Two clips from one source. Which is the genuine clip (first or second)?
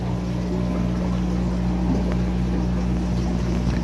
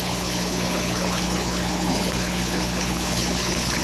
first